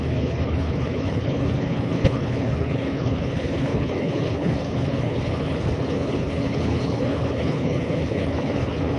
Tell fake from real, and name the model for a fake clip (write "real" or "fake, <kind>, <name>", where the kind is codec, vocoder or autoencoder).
fake, codec, HILCodec